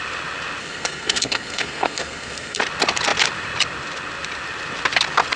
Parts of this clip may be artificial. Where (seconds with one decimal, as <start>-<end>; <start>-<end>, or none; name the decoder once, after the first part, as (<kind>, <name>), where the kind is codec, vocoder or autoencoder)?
0.6-2.6 (codec, SNAC)